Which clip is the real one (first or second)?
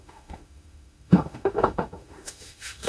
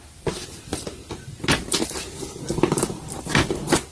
second